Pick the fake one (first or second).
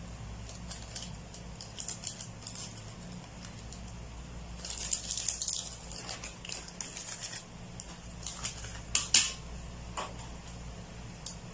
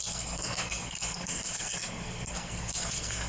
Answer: second